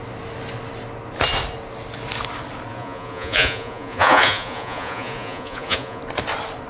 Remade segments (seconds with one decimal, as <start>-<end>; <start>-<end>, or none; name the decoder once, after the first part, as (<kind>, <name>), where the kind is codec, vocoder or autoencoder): 2.7-6.0 (vocoder, Vocos)